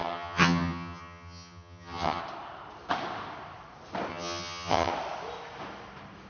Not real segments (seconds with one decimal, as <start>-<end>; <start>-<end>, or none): 0.0-2.2; 4.1-4.9